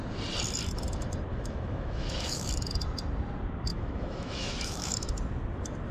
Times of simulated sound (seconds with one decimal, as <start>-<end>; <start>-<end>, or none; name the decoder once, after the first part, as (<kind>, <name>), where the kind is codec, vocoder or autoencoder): 1.3-2.5 (autoencoder, DAC-VAE); 3.7-5.1